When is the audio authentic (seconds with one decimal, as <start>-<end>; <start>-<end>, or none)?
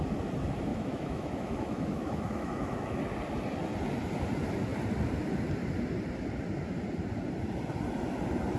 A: 0.0-0.7; 3.0-8.6